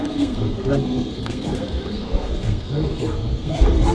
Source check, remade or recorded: remade